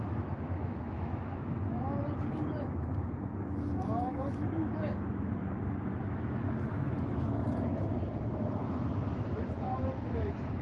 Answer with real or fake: fake